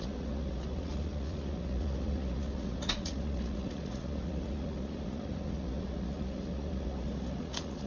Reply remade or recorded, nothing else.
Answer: remade